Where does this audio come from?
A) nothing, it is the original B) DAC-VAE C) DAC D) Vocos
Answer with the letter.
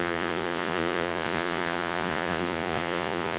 D